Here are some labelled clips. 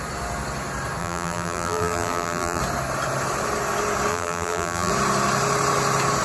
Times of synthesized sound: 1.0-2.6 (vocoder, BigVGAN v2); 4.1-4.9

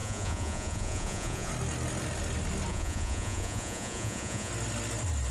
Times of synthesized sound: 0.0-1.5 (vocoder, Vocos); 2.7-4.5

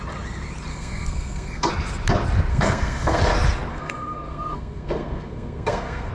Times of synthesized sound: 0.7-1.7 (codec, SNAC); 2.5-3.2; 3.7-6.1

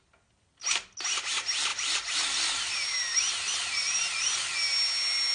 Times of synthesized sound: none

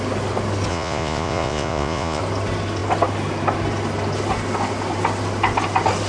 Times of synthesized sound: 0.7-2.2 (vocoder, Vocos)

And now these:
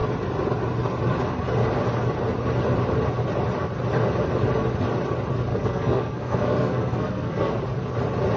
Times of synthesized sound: 5.5-7.6 (codec, SNAC)

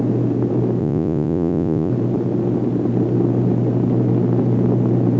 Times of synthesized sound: 0.8-1.9 (vocoder, Vocos)

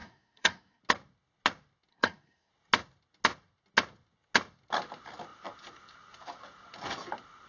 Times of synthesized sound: 0.0-0.8 (codec, SNAC); 1.9-2.5